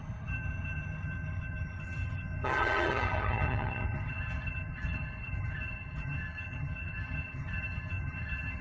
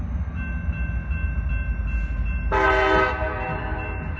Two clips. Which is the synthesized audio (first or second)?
first